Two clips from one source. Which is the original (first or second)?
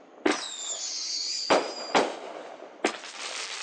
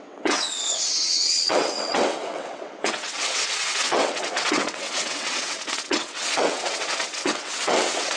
first